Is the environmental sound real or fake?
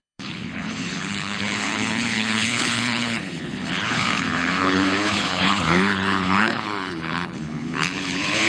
fake